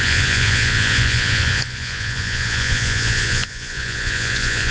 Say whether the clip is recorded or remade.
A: remade